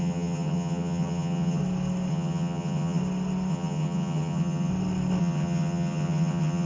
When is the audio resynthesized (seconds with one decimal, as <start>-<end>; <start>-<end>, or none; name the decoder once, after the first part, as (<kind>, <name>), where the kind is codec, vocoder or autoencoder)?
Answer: 0.0-1.6 (vocoder, HiFi-GAN); 2.1-3.0; 3.5-4.7; 5.2-6.7